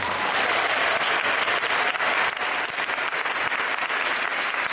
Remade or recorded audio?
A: remade